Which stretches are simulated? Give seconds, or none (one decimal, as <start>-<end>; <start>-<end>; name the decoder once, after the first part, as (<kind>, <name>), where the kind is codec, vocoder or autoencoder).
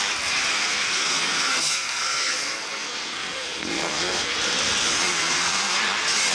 0.5-4.3 (codec, SNAC); 5.1-5.8